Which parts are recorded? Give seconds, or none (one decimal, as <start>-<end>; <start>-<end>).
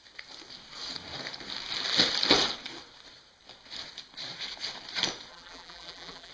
0.0-5.3